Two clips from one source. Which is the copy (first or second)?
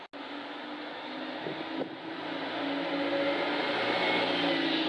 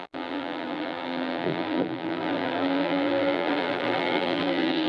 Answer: second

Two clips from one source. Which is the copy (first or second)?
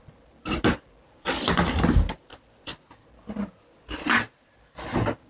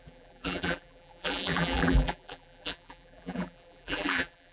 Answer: second